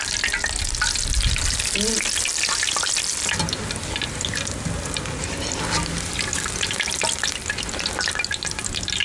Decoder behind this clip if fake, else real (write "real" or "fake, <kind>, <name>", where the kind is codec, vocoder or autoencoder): real